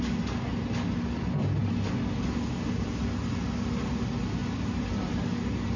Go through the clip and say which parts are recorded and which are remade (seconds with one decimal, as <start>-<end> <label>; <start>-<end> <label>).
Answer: 0.0-5.8 recorded